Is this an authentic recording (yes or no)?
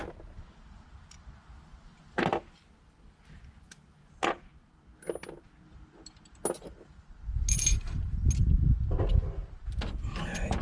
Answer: yes